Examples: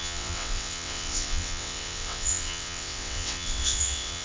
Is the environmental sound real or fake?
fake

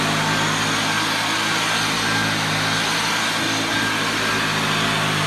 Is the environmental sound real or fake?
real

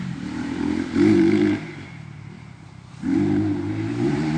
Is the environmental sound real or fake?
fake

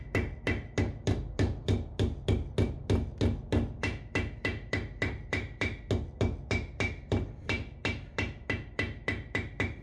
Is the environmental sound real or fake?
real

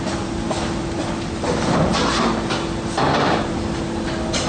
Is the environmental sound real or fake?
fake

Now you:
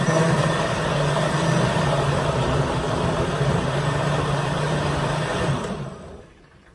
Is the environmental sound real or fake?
fake